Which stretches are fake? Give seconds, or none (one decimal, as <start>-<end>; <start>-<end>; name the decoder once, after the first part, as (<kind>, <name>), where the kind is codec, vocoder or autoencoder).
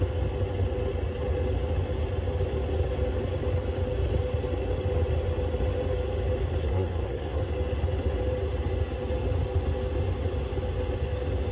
6.6-7.4 (codec, SNAC)